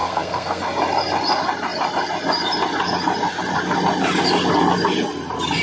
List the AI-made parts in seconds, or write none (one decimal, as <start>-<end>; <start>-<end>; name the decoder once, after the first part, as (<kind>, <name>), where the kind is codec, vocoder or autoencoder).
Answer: 0.0-0.6 (codec, SNAC)